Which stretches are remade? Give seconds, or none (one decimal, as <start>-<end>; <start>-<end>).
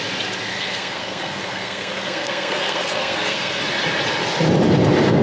0.5-3.6